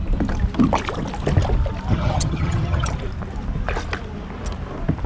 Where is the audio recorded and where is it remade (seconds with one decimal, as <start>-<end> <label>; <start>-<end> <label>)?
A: 0.0-1.9 recorded; 1.9-2.9 remade; 2.9-5.1 recorded